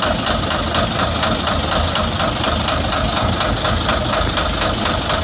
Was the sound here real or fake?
real